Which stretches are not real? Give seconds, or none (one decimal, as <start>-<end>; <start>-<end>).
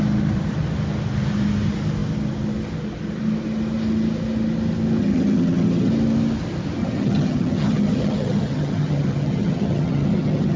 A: 5.0-5.9; 6.8-10.6